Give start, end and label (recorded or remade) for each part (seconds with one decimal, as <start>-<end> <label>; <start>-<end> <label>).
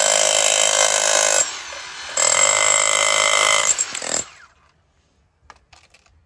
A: 0.0-3.6 recorded; 3.6-4.5 remade; 4.5-6.3 recorded